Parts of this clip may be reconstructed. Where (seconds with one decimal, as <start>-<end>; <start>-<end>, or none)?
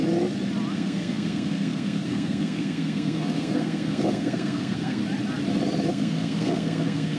0.7-5.0; 5.9-7.2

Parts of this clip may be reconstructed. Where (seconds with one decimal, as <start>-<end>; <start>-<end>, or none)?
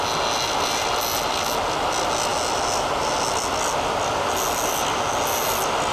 none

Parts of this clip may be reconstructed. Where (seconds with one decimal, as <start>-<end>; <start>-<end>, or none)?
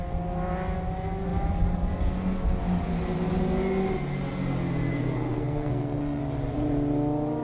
4.9-6.2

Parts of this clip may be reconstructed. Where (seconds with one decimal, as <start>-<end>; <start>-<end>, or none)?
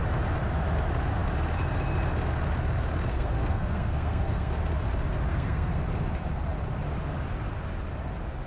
3.1-4.5; 5.3-5.8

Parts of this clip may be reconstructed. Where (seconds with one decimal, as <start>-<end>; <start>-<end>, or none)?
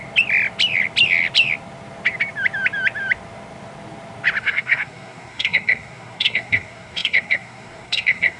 4.4-8.4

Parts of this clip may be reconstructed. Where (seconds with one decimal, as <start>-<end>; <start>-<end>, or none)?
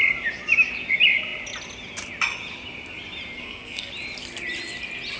3.4-3.9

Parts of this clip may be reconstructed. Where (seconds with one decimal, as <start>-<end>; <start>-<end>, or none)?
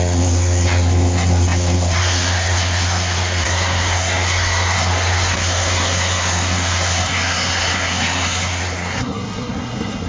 0.0-10.1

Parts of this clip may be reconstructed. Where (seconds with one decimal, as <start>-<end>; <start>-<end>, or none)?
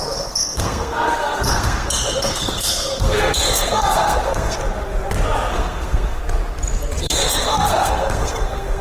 0.0-4.6; 5.5-6.2; 7.0-8.8